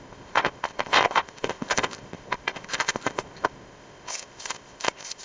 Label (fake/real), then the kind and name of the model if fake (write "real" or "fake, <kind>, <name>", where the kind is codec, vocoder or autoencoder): fake, codec, ZipCodec